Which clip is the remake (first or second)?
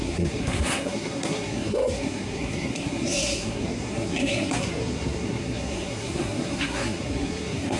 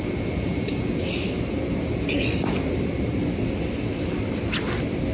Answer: first